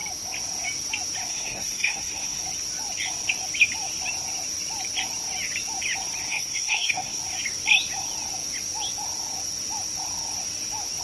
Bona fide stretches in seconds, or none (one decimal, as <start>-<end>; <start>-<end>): 0.0-1.3; 2.4-6.3; 7.2-11.0